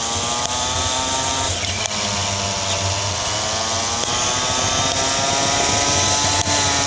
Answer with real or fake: real